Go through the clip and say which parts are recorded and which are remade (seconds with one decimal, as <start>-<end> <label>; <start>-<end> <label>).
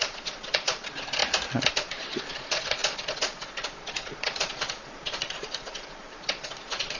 0.0-1.2 remade; 1.2-1.7 recorded; 1.7-7.0 remade